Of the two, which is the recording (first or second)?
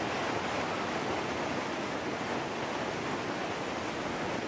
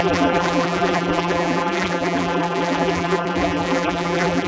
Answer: first